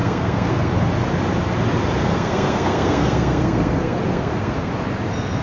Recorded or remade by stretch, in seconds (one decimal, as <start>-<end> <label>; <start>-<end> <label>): 0.0-0.7 remade; 0.7-2.0 recorded; 2.0-4.7 remade; 4.7-5.4 recorded